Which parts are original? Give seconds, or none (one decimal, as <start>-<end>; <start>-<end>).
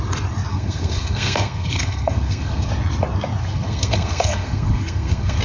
0.0-0.5; 2.7-3.4